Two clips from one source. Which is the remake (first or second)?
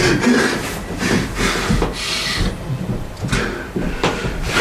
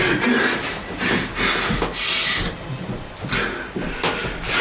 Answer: first